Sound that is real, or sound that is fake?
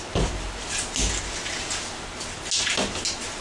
real